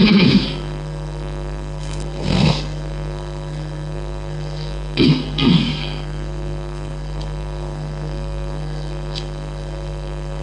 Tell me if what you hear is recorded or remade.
remade